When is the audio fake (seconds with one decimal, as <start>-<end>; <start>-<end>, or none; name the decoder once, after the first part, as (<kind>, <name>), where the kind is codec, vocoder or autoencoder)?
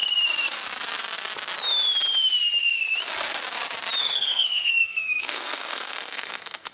4.0-6.7 (codec, SNAC)